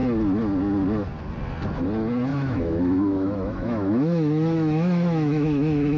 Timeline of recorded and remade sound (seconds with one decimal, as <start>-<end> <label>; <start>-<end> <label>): 0.0-2.3 recorded; 2.3-6.0 remade